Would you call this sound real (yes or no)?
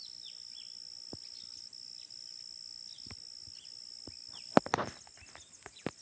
yes